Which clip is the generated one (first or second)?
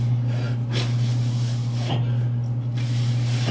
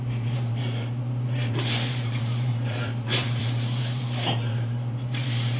second